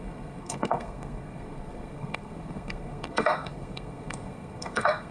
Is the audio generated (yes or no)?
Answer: yes